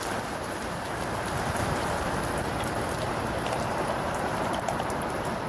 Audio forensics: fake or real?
fake